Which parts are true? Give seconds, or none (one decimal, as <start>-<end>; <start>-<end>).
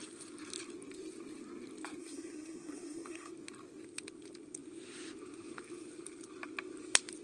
0.0-2.0; 3.3-7.2